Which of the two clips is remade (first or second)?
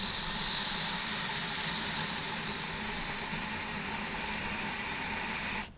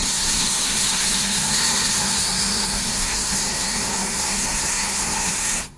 second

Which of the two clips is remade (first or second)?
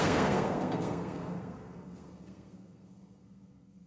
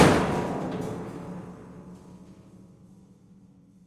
first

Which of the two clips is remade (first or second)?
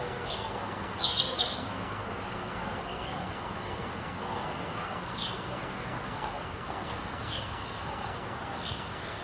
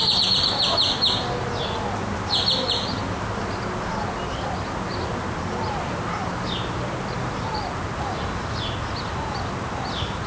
first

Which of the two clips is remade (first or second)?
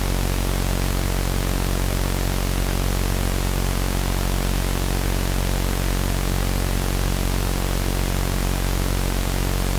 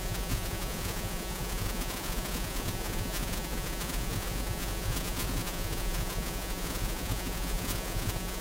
second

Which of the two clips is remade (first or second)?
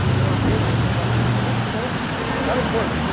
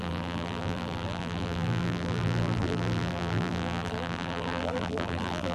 second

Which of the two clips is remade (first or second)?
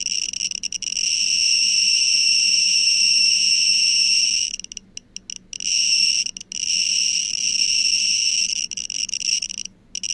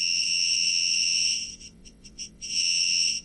second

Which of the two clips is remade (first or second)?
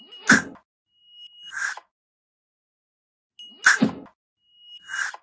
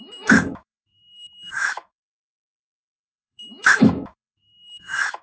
second